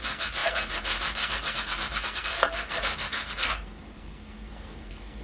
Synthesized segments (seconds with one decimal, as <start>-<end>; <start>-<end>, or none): 0.0-5.2